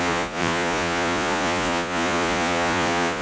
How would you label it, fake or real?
fake